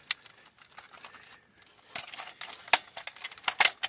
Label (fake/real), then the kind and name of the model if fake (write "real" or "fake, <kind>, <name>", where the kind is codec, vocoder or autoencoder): real